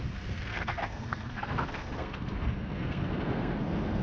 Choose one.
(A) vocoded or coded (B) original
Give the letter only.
A